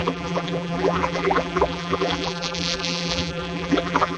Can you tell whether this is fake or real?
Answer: fake